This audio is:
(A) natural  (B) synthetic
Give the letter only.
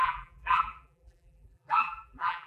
B